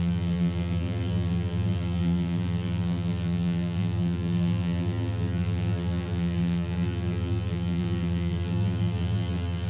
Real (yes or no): no